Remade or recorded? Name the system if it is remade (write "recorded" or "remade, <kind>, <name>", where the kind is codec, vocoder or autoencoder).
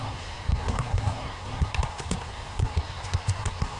remade, codec, SNAC